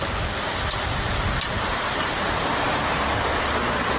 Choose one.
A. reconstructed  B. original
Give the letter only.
B